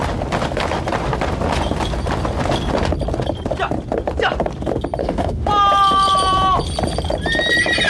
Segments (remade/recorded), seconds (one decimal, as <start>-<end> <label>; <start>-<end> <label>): 0.0-5.0 recorded; 5.0-5.5 remade; 5.5-7.9 recorded